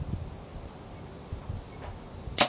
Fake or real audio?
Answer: real